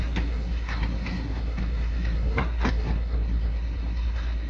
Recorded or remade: remade